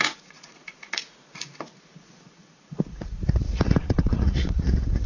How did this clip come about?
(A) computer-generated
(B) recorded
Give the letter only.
A